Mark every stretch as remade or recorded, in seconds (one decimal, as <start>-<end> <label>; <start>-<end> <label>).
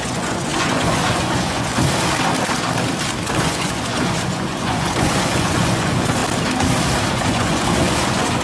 0.0-1.7 remade; 1.7-3.4 recorded; 3.4-6.2 remade; 6.2-7.1 recorded; 7.1-8.4 remade